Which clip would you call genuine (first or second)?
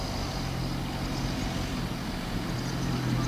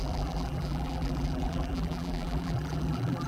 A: first